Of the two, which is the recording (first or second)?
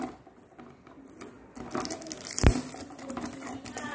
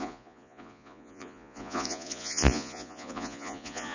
first